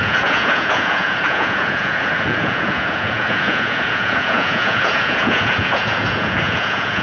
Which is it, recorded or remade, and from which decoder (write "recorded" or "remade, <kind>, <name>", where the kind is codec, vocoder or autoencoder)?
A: remade, vocoder, Vocos